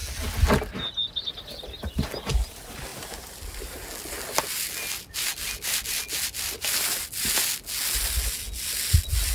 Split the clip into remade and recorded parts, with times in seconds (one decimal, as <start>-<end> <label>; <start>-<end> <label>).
0.0-9.3 recorded